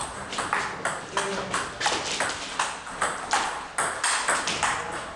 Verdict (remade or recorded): recorded